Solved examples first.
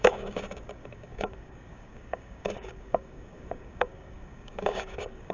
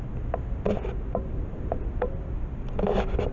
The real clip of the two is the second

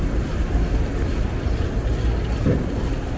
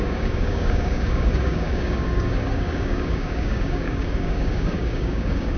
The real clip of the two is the first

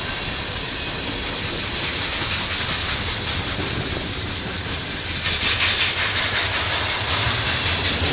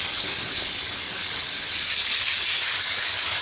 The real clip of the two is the first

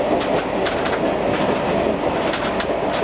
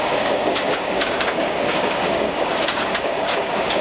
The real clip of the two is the first